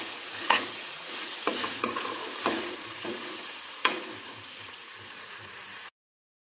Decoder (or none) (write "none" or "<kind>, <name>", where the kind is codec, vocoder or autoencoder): vocoder, Vocos